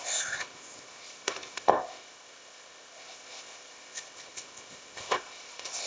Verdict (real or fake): fake